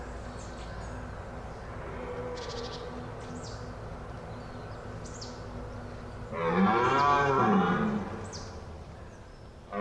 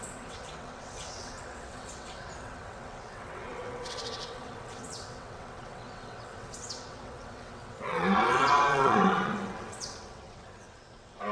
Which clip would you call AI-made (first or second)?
second